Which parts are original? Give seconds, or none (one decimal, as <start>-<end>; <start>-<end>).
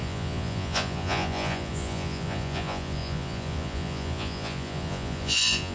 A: none